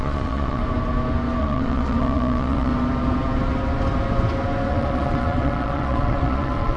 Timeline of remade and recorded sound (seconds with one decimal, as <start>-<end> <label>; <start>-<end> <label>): 0.0-0.6 remade; 0.6-1.4 recorded; 1.4-2.7 remade; 2.7-4.7 recorded; 4.7-6.8 remade